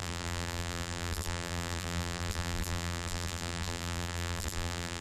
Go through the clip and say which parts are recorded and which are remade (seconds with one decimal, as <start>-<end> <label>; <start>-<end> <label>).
0.0-5.0 remade